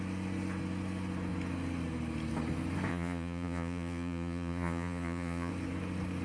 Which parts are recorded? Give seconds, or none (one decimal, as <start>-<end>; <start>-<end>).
0.0-2.9; 5.5-6.2